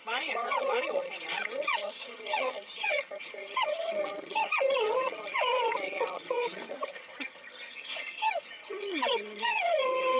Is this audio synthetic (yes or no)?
yes